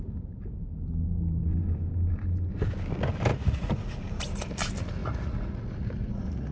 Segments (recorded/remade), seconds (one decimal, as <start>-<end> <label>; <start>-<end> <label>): 0.0-3.3 recorded; 3.3-4.0 remade; 4.0-5.0 recorded; 5.0-6.5 remade